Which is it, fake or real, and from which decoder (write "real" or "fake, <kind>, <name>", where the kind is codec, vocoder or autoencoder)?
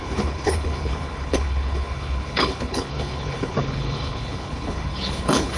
fake, codec, HILCodec